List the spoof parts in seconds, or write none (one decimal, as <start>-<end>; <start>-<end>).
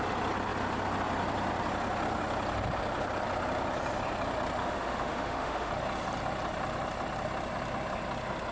4.6-5.7